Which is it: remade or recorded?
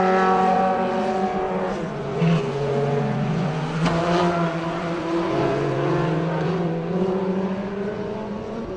remade